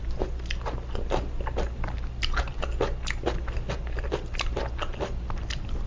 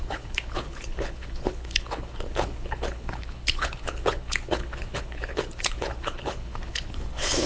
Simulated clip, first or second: second